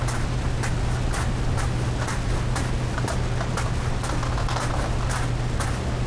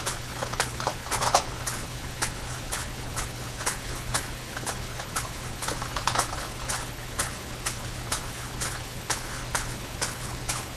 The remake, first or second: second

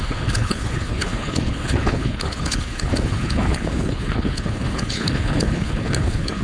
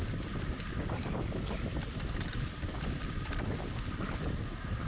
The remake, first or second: first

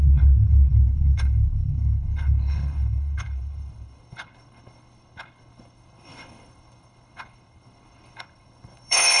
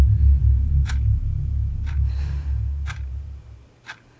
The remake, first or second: first